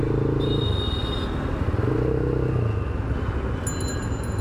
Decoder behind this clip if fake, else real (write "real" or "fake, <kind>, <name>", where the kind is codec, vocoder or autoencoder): real